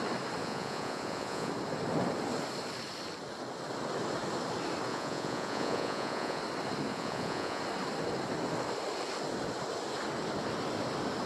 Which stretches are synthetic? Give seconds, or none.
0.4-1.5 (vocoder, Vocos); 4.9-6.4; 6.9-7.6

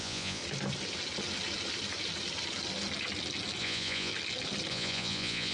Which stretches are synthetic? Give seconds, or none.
0.0-0.4 (vocoder, Vocos); 3.6-4.1; 4.7-5.5

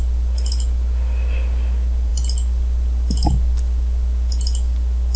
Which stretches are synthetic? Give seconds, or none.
none

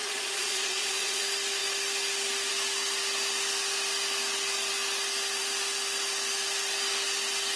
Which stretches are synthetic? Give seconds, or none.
0.0-1.2 (vocoder, Vocos)

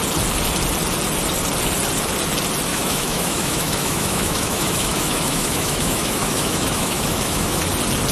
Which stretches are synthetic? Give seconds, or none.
2.7-7.6 (autoencoder, DAC-VAE)